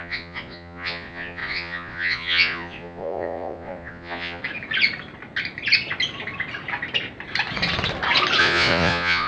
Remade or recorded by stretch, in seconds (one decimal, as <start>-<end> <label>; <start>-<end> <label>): 0.0-4.4 remade; 4.4-8.4 recorded; 8.4-9.3 remade